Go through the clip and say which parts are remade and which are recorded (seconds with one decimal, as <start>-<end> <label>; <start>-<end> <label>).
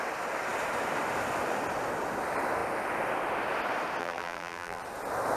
0.0-4.0 recorded; 4.0-4.8 remade; 4.8-5.4 recorded